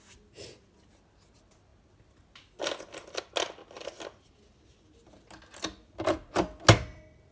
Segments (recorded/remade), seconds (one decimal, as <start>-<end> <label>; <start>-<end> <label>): 0.0-7.3 recorded